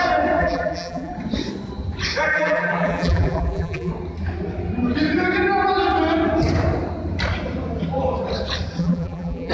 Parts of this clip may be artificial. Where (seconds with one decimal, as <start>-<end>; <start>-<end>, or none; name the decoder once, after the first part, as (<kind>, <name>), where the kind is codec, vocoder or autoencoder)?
0.4-1.1 (vocoder, BigVGAN v2); 2.3-3.9; 8.8-9.5